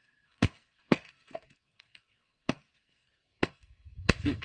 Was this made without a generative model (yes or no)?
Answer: no